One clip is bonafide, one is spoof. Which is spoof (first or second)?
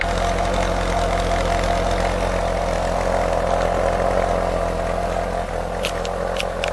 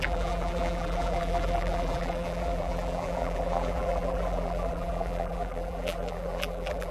second